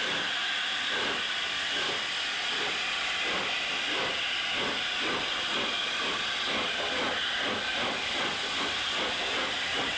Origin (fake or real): real